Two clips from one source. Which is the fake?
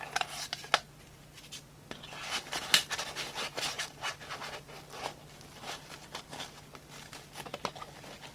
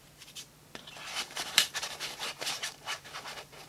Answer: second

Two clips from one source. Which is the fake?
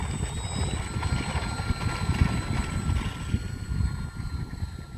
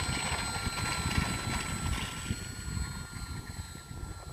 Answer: first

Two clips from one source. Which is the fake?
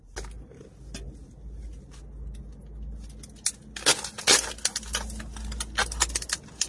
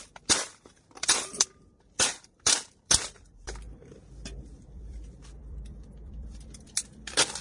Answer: second